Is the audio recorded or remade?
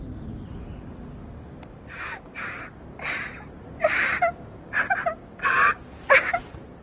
recorded